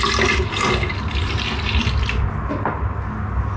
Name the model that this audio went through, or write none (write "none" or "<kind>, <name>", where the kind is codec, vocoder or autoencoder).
none